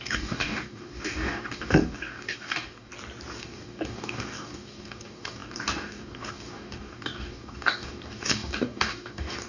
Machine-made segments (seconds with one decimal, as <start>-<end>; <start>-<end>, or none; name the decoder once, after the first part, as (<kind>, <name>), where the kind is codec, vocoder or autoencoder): 0.0-2.9 (codec, DAC); 3.4-9.5